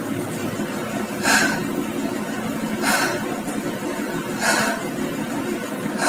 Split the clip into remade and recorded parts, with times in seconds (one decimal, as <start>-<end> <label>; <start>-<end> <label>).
0.0-6.1 recorded